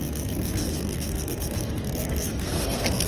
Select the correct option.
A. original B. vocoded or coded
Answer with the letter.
B